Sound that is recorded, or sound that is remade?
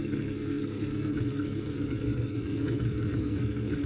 remade